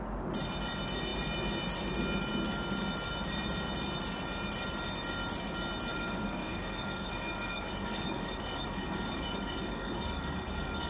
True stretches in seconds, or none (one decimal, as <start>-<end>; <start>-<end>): 0.0-5.9